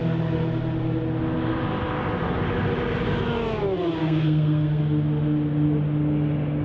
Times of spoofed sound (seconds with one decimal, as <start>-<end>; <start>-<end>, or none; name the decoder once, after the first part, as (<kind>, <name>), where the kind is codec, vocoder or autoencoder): 4.0-4.8 (codec, SNAC)